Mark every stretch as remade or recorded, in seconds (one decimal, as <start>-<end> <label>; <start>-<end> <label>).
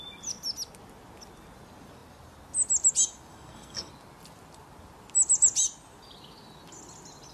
0.0-3.3 recorded; 3.3-3.9 remade; 3.9-7.3 recorded